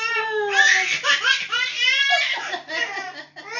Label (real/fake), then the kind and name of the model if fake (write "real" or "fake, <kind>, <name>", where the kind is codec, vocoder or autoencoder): real